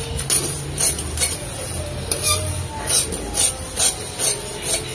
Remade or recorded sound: recorded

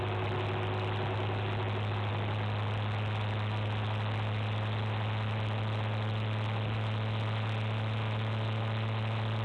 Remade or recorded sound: recorded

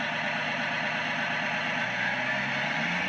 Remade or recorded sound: recorded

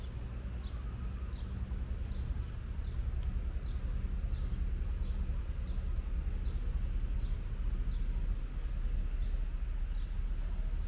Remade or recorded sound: recorded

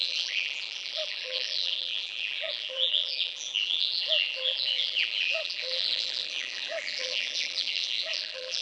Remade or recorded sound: remade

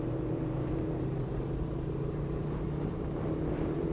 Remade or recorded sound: remade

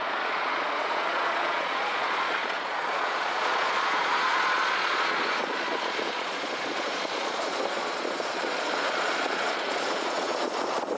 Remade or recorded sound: remade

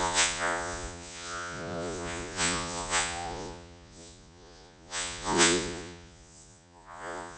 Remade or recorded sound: remade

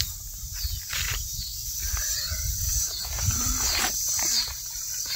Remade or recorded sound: remade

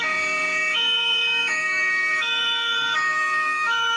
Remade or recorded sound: remade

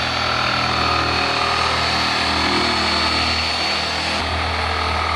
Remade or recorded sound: recorded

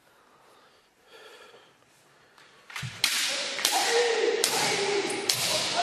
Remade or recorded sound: remade